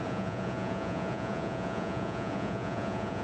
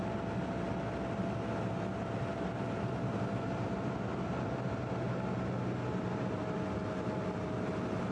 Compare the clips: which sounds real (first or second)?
second